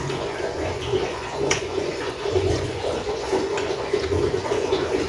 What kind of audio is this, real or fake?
fake